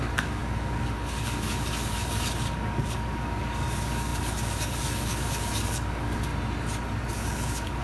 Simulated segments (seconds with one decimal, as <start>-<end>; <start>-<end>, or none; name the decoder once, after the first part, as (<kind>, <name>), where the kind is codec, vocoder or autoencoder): 0.0-6.3 (codec, DAC); 7.1-7.8